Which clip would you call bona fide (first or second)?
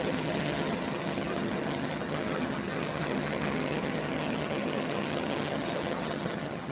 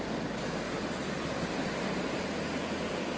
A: second